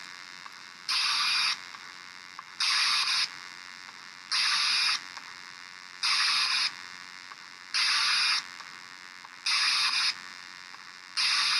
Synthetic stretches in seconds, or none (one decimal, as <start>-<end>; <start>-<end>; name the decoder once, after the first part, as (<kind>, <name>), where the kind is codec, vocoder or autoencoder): 0.0-8.0 (vocoder, BigVGAN v2); 10.3-11.6